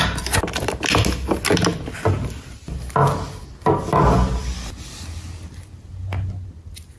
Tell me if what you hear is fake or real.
real